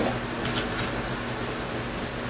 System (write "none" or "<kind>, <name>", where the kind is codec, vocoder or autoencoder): none